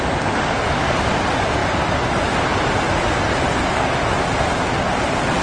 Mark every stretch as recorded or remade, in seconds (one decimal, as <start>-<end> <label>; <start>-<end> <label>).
0.0-5.4 recorded